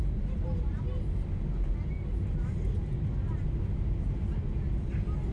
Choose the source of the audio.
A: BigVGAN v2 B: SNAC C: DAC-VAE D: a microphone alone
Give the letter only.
D